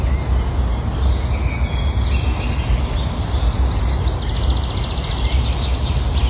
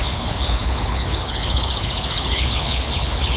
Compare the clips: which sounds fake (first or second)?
second